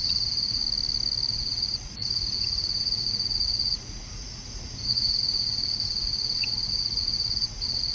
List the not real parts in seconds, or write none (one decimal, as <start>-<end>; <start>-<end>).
0.0-0.6; 1.3-7.9